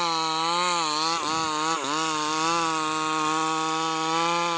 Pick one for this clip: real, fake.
real